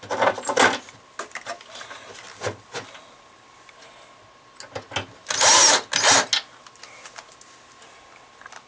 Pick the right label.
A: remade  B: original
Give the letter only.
B